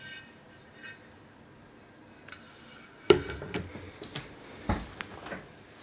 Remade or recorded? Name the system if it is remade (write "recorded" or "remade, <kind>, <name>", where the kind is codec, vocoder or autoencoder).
recorded